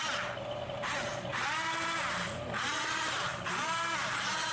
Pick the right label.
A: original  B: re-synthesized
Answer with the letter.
A